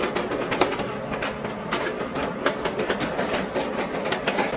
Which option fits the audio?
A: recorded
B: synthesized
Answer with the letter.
A